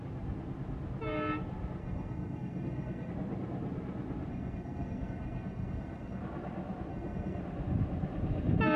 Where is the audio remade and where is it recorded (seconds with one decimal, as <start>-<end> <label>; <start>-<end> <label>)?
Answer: 0.0-1.8 recorded; 1.8-3.1 remade; 3.1-4.3 recorded; 4.3-6.2 remade; 6.2-6.9 recorded; 6.9-7.4 remade; 7.4-8.8 recorded